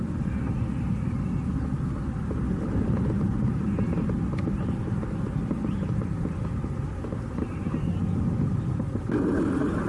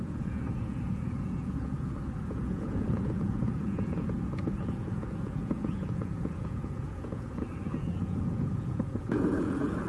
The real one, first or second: first